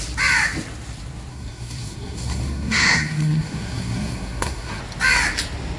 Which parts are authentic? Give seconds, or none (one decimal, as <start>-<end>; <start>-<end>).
0.0-1.3; 4.8-5.8